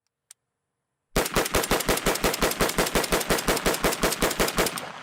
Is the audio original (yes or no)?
yes